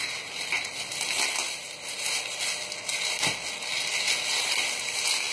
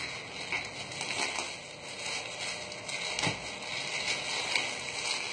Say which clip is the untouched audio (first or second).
second